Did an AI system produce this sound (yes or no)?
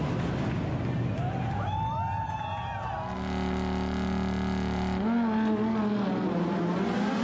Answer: no